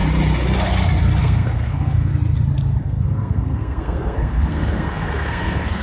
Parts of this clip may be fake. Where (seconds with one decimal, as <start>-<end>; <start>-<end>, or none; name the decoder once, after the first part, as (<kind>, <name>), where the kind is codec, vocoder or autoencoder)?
1.2-2.1 (codec, SNAC); 2.8-5.8